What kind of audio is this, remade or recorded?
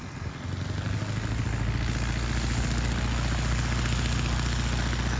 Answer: recorded